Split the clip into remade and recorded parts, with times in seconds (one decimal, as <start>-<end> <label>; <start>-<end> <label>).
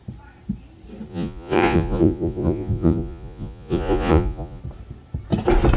0.0-1.1 recorded; 1.1-4.6 remade; 4.6-5.8 recorded